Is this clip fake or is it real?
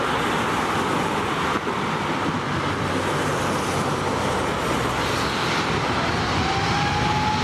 real